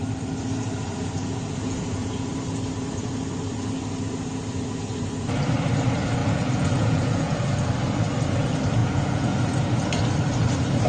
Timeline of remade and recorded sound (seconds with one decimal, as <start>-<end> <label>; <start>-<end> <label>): 0.0-1.2 recorded; 1.2-2.3 remade; 2.3-6.2 recorded; 6.2-7.7 remade; 7.7-8.8 recorded; 8.8-9.4 remade; 9.4-10.9 recorded